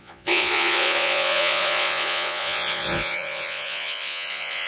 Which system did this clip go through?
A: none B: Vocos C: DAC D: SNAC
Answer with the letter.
B